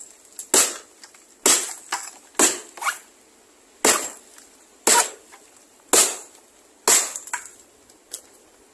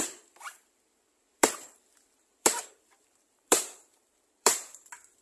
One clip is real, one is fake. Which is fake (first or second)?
second